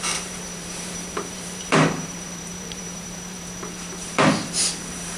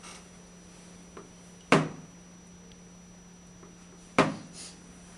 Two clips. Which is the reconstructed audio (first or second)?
first